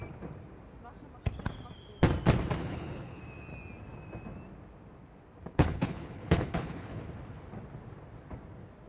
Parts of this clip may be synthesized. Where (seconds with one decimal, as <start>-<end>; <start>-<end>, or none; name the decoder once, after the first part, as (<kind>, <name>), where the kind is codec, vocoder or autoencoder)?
2.6-3.2 (codec, HILCodec); 5.5-7.0